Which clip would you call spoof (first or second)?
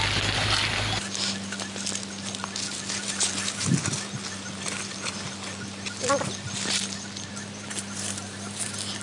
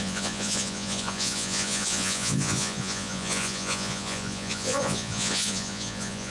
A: second